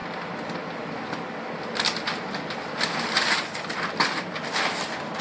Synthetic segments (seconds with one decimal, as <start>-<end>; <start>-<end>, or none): none